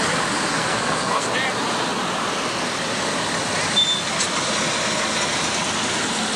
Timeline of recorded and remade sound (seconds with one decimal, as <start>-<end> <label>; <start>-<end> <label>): 0.0-0.5 recorded; 0.5-1.3 remade; 1.3-6.4 recorded

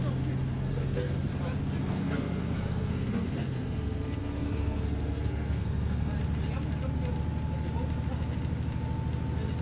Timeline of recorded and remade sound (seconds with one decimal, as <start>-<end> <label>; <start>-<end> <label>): 0.0-0.5 recorded; 0.5-1.3 remade; 1.3-1.8 recorded; 1.8-6.1 remade; 6.1-9.6 recorded

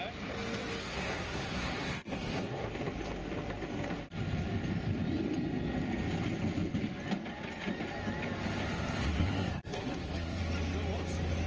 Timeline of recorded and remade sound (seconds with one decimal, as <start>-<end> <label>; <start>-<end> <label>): 0.0-0.8 recorded; 0.8-2.7 remade; 2.7-9.1 recorded; 9.1-10.4 remade; 10.4-11.5 recorded

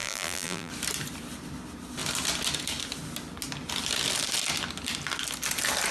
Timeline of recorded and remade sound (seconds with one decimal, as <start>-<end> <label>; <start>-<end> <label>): 0.0-0.7 remade; 0.7-5.9 recorded

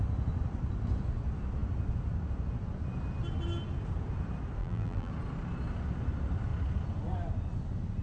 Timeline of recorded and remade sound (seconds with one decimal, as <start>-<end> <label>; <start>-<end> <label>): 0.0-4.6 recorded; 4.6-5.1 remade; 5.1-8.0 recorded

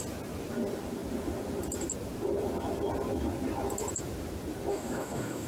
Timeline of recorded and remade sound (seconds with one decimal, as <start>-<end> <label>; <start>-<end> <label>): 0.0-4.7 recorded; 4.7-5.5 remade